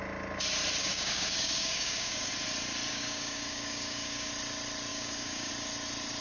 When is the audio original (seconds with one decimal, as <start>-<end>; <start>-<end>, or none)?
0.0-0.8; 2.3-2.9; 4.3-4.9; 5.5-6.2